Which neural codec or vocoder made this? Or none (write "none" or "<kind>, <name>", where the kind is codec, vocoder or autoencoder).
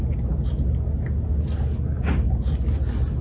none